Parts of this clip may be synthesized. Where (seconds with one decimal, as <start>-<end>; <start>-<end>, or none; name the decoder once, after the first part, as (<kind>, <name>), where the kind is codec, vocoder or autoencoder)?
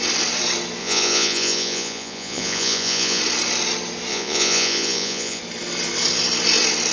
0.8-3.2 (vocoder, Vocos); 4.1-5.4